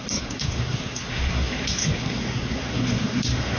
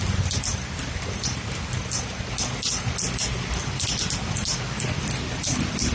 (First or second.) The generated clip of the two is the first